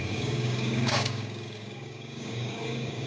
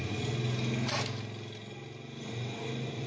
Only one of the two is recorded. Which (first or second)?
second